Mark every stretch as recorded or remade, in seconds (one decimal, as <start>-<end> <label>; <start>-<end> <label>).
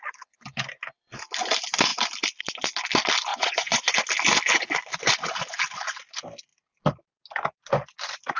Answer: 0.0-3.3 recorded; 3.3-3.9 remade; 3.9-8.4 recorded